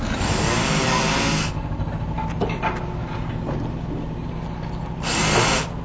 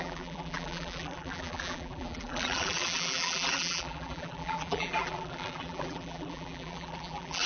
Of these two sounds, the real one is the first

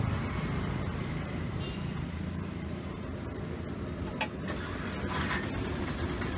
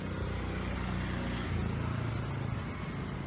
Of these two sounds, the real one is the second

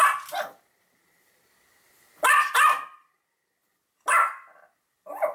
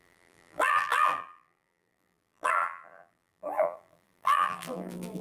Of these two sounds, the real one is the first